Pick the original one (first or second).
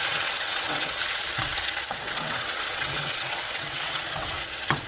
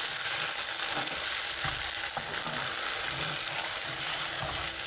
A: second